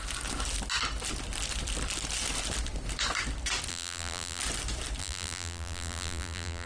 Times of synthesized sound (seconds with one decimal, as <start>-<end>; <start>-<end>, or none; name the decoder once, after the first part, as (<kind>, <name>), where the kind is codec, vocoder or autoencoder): 3.7-4.4 (vocoder, BigVGAN v2); 5.0-6.7